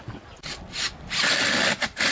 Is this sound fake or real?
real